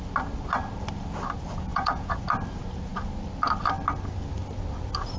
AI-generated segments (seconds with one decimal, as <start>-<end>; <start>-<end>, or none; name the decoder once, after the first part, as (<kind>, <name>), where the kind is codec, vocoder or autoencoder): 1.7-2.2 (vocoder, Vocos)